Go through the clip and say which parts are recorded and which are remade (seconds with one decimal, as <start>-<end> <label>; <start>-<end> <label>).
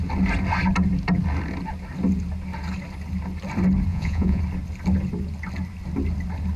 0.0-3.9 recorded; 3.9-4.4 remade; 4.4-6.6 recorded